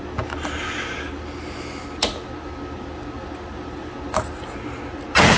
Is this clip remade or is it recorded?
recorded